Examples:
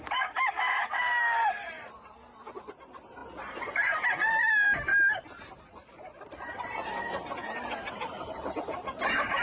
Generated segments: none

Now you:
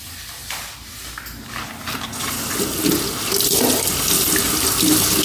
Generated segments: none

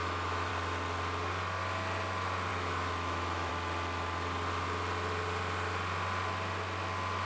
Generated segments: 0.0-0.5 (autoencoder, DAC-VAE); 2.5-3.5

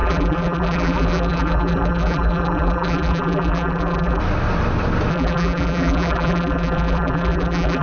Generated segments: 0.0-4.2 (vocoder, BigVGAN v2); 5.1-7.8

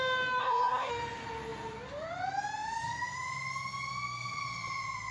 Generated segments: 0.4-0.9 (codec, SNAC)